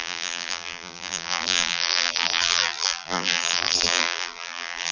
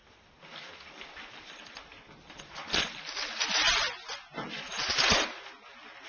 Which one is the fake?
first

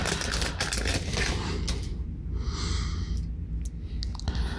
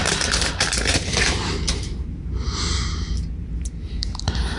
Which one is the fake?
second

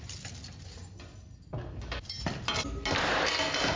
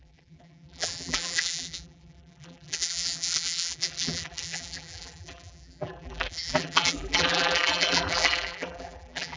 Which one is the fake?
second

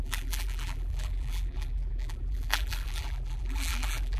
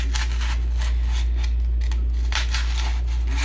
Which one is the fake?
first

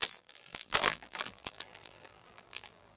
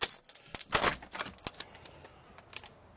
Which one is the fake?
first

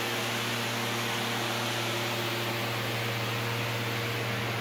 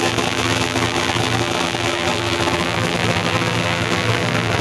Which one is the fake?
second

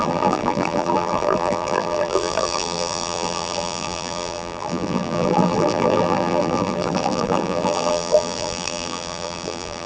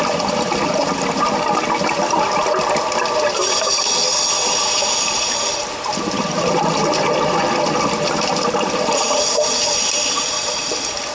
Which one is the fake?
first